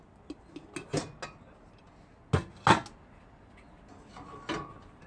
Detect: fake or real real